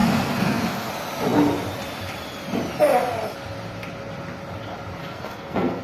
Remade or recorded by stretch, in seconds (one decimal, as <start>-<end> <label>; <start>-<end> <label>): 0.0-0.9 remade; 0.9-5.0 recorded; 5.0-5.8 remade